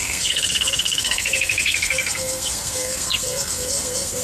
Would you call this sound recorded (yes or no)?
no